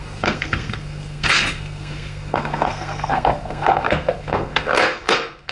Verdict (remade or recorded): remade